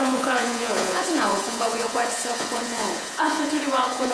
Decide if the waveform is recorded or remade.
remade